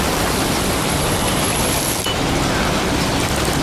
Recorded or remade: recorded